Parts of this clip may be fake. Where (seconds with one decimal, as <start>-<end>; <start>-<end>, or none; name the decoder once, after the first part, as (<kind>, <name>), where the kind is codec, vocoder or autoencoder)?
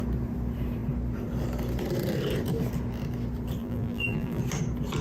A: 3.6-4.4 (vocoder, BigVGAN v2)